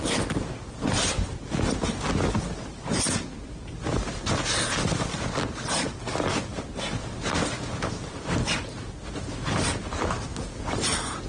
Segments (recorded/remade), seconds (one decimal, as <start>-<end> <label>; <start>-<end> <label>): 0.0-11.3 recorded